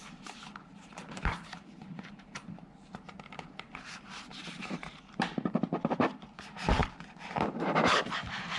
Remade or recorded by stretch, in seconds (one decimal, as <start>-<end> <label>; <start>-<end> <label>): 0.0-6.8 remade; 6.8-8.2 recorded; 8.2-8.6 remade